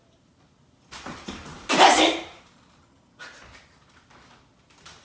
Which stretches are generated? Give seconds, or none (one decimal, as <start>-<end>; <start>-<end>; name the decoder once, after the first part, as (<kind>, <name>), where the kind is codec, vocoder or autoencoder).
none